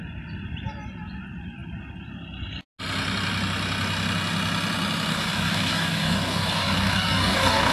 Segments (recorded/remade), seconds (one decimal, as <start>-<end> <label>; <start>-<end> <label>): 0.0-5.1 recorded; 5.1-7.7 remade